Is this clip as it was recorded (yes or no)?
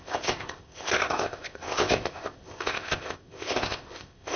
no